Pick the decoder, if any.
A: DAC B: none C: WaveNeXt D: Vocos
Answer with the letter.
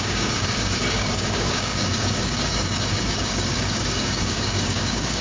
A